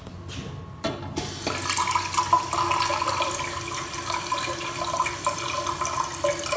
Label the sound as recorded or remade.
recorded